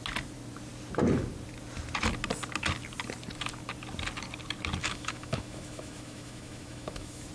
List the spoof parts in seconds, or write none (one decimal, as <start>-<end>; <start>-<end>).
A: 4.8-7.3